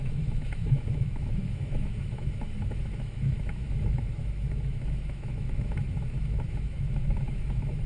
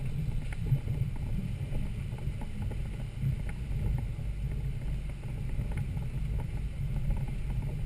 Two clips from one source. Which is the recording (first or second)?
second